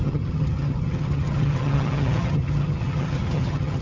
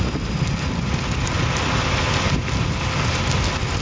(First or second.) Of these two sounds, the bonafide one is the second